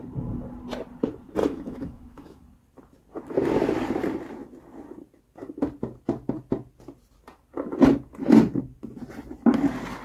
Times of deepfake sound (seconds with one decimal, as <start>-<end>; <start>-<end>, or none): 1.4-2.4